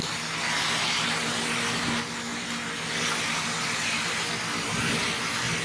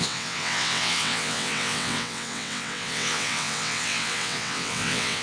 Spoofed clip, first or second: second